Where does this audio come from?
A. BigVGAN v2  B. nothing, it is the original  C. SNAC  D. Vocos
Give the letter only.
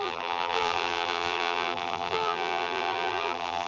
A